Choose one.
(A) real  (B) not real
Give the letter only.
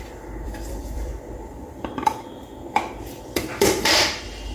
B